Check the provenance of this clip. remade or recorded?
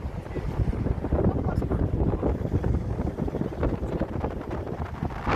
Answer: recorded